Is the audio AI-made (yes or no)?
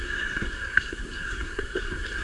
yes